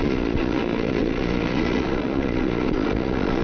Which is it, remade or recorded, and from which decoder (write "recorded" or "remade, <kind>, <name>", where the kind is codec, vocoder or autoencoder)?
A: remade, vocoder, Vocos